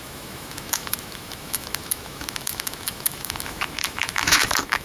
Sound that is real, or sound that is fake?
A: fake